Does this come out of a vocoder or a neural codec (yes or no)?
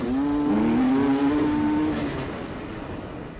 no